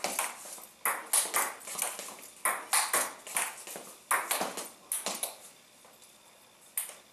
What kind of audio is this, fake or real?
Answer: real